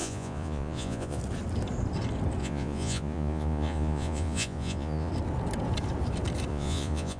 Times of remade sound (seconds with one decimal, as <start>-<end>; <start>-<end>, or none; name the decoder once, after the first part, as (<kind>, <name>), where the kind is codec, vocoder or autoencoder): 0.0-1.2 (vocoder, Vocos); 2.4-5.1; 6.5-7.2